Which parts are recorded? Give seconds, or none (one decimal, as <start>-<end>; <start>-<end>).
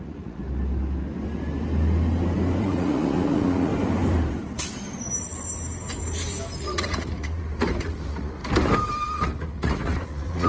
0.4-2.6; 3.7-6.6; 8.4-9.1